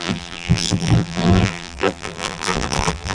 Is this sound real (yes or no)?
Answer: no